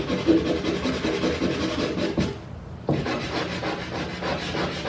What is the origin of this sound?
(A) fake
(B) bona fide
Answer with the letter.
B